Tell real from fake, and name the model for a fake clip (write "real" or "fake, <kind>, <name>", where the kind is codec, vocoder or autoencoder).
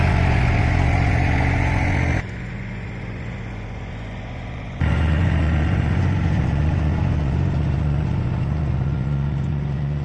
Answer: fake, vocoder, Vocos